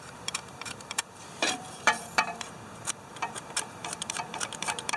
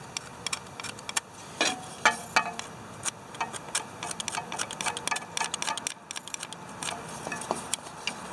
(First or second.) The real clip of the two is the second